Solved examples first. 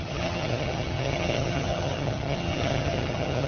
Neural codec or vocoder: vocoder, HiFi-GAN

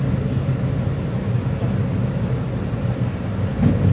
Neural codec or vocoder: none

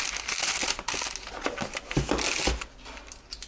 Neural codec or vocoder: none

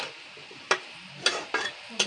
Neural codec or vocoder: none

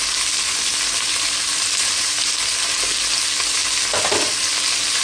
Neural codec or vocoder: none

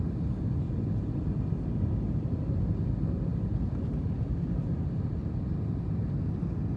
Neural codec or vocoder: none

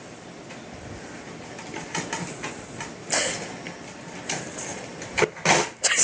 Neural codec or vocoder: vocoder, BigVGAN v2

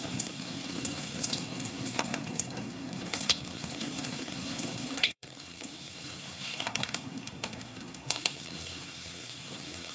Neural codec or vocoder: codec, SNAC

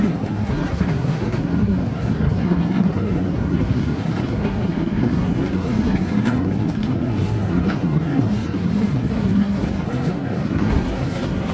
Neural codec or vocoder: codec, SNAC